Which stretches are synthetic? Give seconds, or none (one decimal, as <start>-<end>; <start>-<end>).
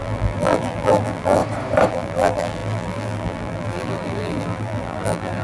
0.0-1.4; 1.9-5.4